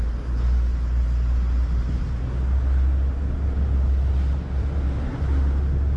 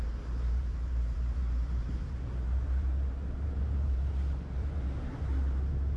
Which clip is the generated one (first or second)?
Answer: second